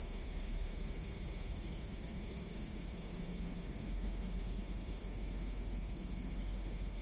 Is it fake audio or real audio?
fake